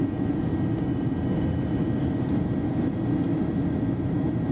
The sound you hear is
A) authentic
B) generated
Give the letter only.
A